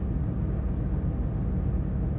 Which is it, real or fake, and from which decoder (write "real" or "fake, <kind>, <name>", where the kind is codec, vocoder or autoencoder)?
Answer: real